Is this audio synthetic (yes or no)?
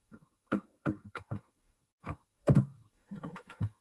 yes